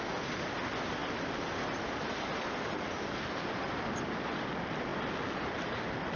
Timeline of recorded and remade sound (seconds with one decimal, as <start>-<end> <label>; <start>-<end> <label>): 0.0-6.2 recorded